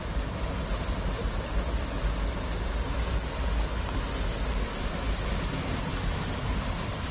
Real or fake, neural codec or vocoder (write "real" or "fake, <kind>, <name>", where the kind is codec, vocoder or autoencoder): real